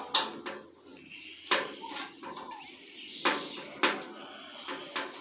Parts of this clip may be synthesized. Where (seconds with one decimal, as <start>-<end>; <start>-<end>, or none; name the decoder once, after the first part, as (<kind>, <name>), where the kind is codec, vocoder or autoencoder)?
none